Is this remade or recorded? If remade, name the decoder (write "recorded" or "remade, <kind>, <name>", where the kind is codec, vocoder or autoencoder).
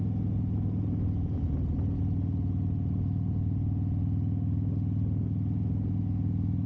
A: recorded